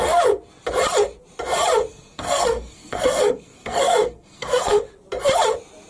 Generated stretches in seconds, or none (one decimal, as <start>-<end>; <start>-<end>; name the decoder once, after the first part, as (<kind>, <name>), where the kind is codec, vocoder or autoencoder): 1.9-4.8 (codec, SNAC)